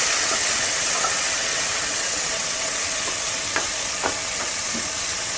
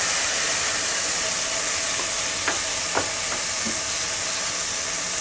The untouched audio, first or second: second